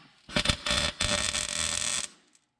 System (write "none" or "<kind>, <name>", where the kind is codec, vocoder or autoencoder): none